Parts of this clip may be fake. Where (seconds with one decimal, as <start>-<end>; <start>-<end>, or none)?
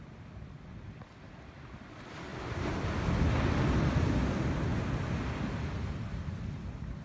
none